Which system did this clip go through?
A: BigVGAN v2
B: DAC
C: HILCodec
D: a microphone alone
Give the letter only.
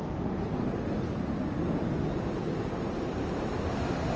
D